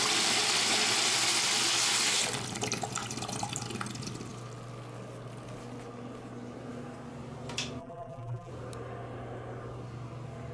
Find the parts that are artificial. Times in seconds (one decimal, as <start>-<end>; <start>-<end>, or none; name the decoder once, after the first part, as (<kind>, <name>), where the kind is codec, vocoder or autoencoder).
7.8-8.5 (vocoder, BigVGAN v2)